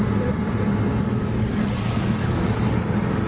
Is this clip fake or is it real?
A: real